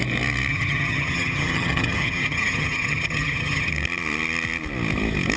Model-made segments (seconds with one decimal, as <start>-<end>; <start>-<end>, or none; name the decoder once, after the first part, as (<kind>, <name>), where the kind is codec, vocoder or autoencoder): 0.5-3.7 (vocoder, HiFi-GAN)